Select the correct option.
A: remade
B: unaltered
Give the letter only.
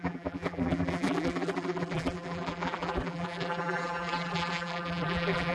A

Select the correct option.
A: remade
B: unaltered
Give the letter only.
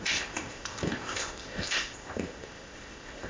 A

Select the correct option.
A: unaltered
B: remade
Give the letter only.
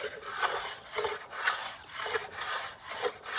A